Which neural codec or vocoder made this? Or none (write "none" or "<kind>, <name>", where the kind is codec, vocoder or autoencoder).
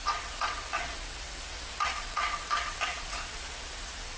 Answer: vocoder, WaveNeXt